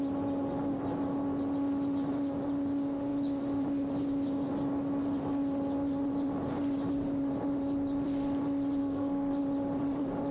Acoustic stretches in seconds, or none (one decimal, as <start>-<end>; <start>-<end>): 0.0-8.8; 9.4-10.3